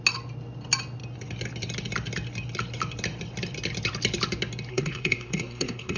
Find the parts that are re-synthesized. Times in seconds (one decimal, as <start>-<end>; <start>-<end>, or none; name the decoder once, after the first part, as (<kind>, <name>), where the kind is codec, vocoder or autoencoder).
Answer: 4.7-6.0 (codec, SNAC)